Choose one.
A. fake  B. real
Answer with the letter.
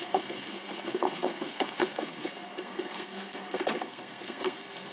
A